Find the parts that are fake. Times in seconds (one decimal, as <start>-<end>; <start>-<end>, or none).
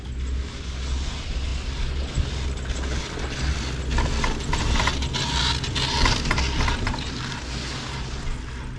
none